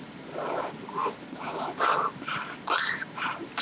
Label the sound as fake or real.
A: real